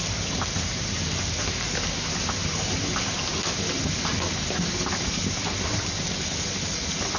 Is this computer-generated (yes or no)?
no